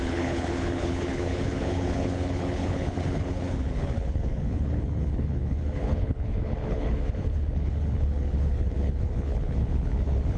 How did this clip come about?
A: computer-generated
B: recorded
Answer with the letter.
A